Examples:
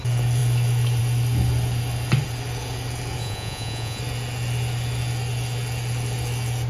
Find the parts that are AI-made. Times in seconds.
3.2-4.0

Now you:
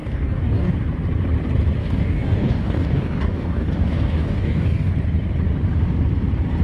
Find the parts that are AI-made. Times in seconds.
0.0-0.7; 1.8-4.9